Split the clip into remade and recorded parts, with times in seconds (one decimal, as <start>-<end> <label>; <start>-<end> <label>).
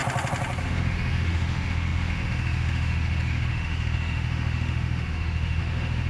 0.0-0.6 recorded; 0.6-6.1 remade